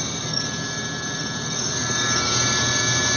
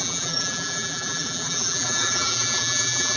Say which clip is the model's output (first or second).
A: second